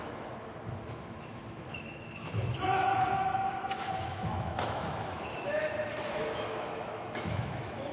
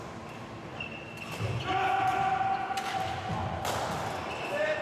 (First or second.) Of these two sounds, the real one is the second